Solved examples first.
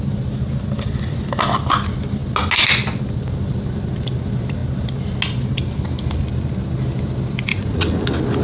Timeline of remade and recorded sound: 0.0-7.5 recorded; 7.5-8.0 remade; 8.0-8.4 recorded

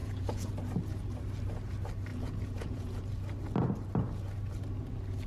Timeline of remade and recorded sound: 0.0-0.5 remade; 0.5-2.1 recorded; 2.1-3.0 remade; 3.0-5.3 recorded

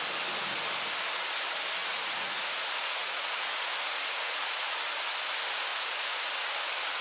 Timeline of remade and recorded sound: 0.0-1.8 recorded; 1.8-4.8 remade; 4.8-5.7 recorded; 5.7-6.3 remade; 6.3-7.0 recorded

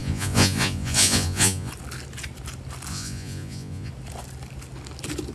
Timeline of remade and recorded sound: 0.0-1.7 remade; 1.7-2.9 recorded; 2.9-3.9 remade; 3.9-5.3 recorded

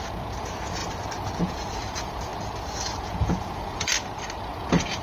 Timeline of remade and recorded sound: 0.0-0.8 remade; 0.8-1.4 recorded; 1.4-2.3 remade; 2.3-3.0 recorded; 3.0-3.9 remade; 3.9-4.4 recorded; 4.4-5.0 remade

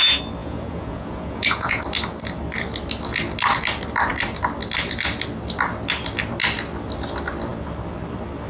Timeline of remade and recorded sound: 0.0-0.4 recorded; 0.4-1.8 remade; 1.8-8.5 recorded

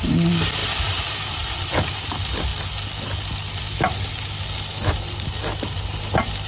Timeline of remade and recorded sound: 0.0-6.5 recorded